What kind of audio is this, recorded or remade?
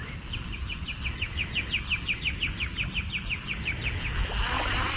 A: recorded